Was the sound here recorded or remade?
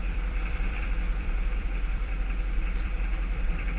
remade